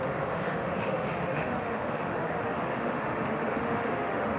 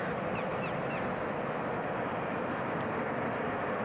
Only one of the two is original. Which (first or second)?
second